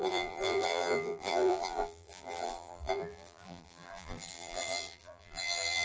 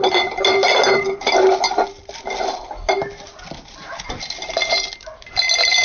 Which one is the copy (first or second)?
first